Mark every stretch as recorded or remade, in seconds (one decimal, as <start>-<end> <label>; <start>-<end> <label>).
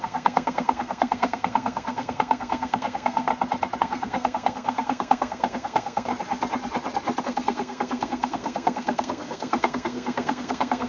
0.0-3.3 remade; 3.3-3.8 recorded; 3.8-6.1 remade; 6.1-7.2 recorded; 7.2-10.9 remade